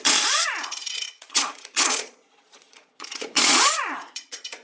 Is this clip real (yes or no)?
no